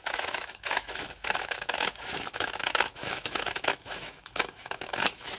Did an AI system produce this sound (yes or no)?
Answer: yes